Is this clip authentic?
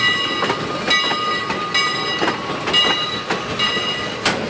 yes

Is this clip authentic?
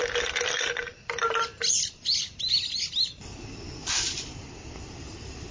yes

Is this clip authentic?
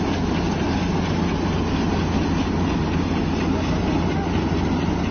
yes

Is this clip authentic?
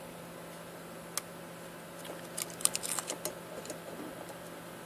yes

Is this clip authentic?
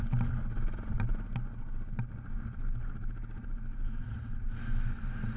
yes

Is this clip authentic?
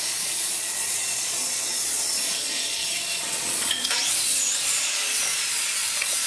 no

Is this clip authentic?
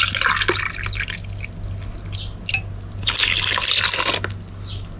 yes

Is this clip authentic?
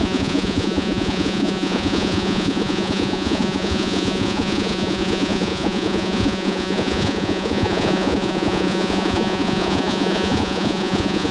no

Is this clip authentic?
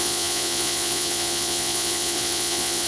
no